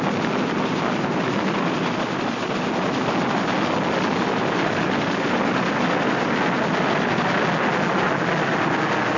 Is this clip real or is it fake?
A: real